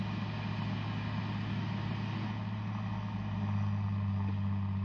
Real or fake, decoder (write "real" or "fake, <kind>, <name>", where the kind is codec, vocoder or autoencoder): real